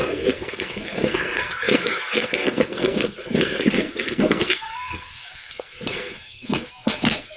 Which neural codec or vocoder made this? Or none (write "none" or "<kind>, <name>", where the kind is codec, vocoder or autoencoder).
codec, SNAC